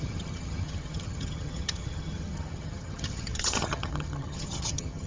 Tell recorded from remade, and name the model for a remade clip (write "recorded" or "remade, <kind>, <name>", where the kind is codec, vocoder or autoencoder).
remade, vocoder, HiFi-GAN